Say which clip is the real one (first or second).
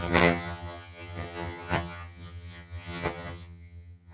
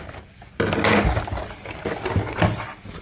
second